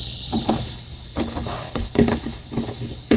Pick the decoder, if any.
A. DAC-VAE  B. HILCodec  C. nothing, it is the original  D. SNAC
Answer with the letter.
B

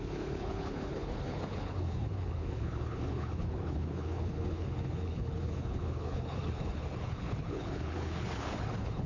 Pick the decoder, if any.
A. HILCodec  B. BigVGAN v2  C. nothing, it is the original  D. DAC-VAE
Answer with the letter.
A